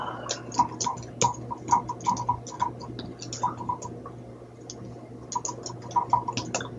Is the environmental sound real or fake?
real